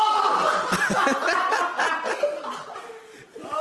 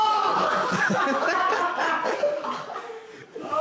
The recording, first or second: first